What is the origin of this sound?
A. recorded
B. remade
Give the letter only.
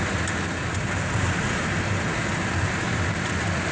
A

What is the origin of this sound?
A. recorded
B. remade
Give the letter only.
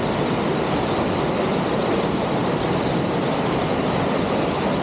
A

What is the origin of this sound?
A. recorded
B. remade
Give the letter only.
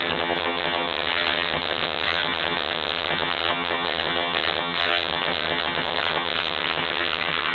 B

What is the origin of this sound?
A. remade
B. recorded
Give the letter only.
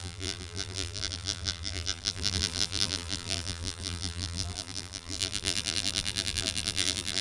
A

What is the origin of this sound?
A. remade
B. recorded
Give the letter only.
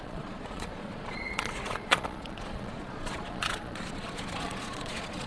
A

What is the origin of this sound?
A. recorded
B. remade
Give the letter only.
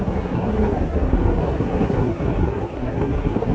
B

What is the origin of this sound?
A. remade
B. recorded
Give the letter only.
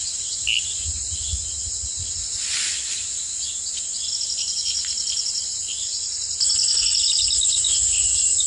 B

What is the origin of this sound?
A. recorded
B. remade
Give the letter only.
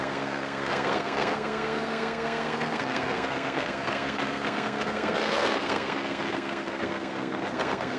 B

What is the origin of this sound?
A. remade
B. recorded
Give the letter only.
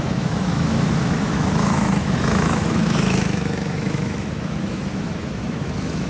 A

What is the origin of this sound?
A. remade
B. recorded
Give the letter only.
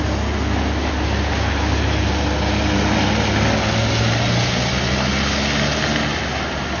B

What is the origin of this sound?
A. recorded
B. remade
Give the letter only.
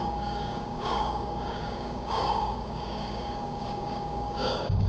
B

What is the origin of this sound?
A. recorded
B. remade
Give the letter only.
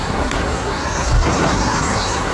B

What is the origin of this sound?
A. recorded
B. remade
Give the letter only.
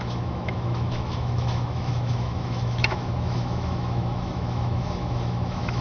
B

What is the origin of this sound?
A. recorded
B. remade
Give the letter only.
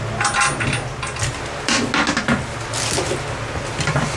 A